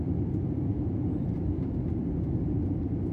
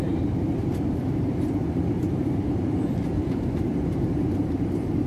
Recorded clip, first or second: first